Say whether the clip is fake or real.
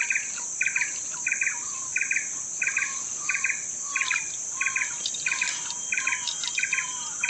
real